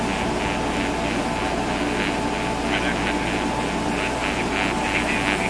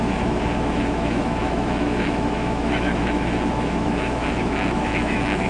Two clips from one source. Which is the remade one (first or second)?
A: second